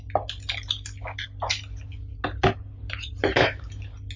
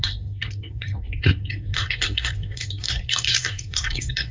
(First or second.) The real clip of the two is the first